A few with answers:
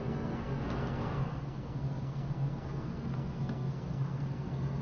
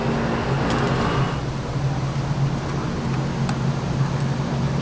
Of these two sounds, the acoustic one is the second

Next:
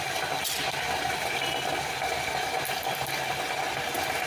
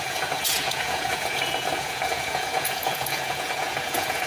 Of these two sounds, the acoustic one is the first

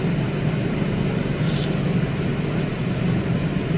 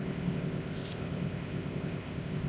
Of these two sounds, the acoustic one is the first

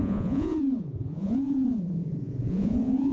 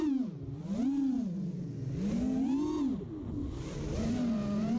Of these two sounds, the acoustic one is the second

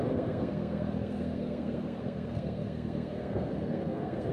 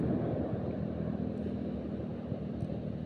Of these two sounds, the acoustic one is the second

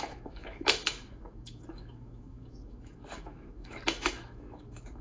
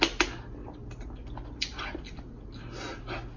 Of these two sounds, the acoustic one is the second